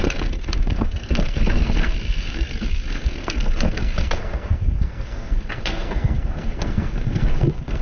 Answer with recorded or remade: remade